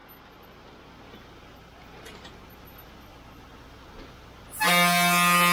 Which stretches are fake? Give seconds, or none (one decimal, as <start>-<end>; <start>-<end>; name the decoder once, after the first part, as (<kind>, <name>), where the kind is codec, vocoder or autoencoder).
none